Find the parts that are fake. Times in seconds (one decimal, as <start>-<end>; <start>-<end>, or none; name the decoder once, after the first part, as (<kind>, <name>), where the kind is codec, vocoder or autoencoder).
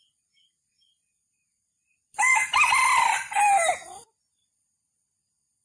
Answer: none